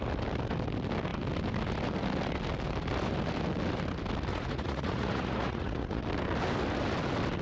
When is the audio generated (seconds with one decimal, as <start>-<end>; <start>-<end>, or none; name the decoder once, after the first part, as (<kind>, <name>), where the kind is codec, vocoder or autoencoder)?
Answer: 4.3-6.0 (vocoder, Vocos)